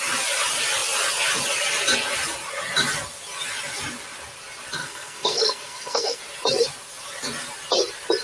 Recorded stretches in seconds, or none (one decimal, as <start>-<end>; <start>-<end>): 0.0-4.8; 6.2-8.2